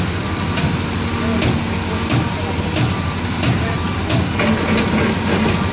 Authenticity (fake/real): real